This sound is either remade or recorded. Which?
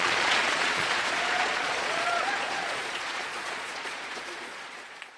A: remade